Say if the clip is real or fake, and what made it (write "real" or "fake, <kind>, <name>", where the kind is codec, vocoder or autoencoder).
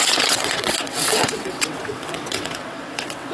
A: fake, vocoder, WaveNeXt